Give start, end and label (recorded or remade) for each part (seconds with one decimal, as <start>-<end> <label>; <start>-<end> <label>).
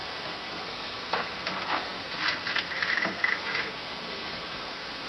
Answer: 0.0-5.1 remade